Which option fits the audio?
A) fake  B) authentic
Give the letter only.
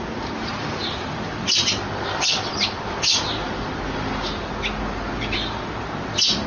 B